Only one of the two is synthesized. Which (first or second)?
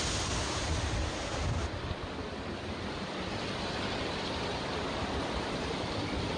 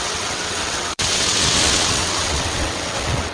second